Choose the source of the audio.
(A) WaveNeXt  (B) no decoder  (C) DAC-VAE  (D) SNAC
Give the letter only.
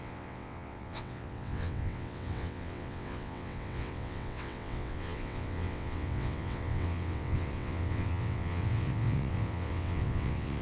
A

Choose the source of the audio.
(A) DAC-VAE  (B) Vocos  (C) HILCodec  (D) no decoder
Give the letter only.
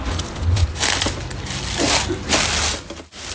D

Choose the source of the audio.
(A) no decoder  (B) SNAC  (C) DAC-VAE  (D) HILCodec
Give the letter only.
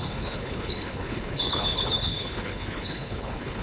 D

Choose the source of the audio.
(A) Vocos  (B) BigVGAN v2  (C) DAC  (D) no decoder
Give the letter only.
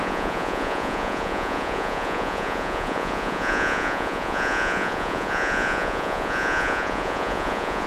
A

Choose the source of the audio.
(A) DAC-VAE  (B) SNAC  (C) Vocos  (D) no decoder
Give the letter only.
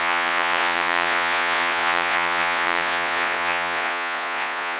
C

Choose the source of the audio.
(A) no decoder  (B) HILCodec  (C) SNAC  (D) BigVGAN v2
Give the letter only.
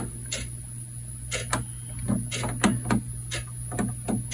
A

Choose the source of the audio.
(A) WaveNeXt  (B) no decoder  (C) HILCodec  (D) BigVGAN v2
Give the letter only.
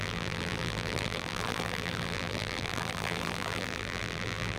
D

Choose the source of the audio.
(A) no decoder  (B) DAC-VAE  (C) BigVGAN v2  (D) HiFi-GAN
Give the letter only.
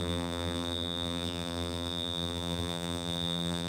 C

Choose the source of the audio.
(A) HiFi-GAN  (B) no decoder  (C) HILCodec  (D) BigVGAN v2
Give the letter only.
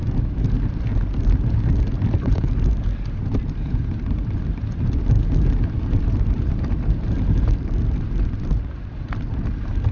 B